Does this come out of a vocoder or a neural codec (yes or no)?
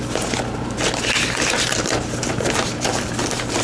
no